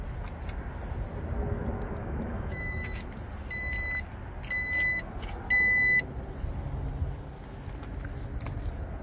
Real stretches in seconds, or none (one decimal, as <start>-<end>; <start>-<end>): 0.0-2.0; 3.0-9.0